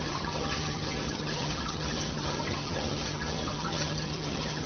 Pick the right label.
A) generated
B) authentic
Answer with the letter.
A